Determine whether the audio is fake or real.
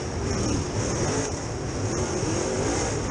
fake